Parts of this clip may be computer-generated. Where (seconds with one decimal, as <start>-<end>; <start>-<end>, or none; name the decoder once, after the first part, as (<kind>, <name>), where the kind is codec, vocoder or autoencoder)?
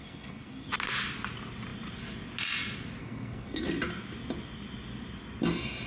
0.0-0.7 (codec, SNAC); 3.0-3.7